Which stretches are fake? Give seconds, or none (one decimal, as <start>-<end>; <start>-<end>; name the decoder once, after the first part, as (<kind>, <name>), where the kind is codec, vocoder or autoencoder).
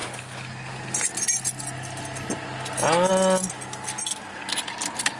none